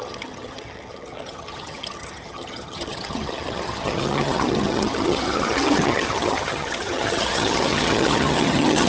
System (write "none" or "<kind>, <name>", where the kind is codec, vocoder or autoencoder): vocoder, HiFi-GAN